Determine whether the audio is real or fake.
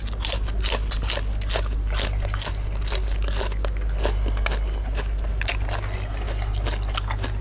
real